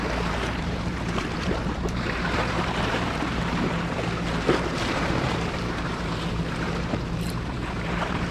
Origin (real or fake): fake